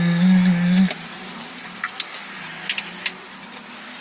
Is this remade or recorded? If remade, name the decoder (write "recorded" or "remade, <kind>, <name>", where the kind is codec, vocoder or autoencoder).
recorded